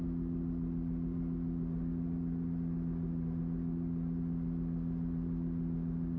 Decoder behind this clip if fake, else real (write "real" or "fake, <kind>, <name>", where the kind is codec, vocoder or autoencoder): real